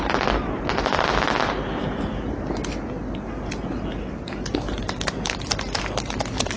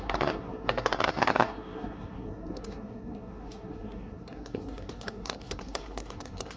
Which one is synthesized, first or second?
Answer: second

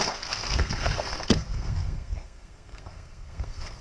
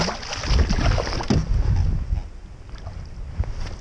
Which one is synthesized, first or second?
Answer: first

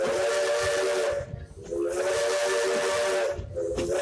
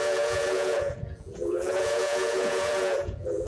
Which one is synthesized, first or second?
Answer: second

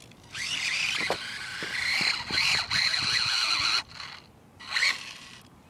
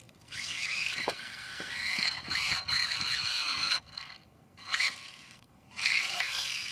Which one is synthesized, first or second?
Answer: second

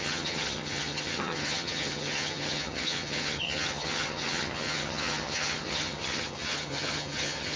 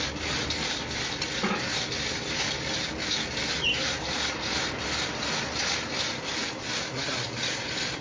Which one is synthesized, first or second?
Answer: first